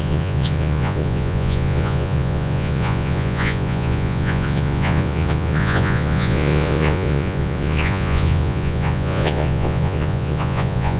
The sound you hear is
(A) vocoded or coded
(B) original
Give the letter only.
A